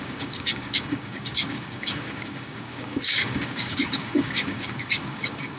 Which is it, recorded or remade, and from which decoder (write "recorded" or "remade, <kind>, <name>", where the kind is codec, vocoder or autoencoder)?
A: remade, codec, DAC